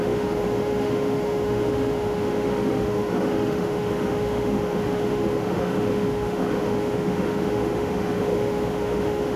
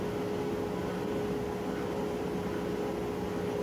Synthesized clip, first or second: first